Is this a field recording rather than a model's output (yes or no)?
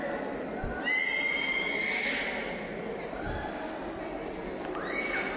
yes